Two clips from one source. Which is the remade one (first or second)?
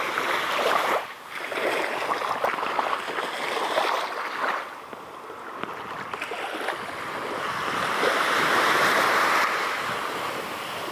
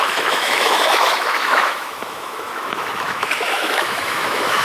second